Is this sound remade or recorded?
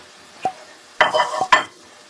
recorded